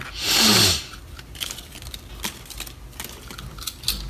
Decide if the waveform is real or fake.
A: real